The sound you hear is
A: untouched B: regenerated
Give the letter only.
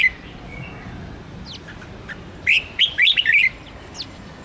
A